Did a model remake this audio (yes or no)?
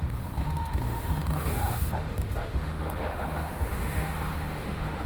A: yes